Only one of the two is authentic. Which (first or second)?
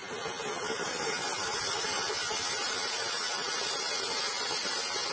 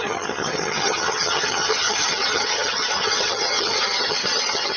first